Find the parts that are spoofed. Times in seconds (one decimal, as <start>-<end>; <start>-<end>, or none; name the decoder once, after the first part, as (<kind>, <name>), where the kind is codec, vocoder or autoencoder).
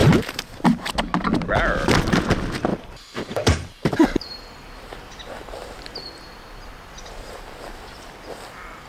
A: 0.0-0.9 (vocoder, BigVGAN v2); 2.7-4.4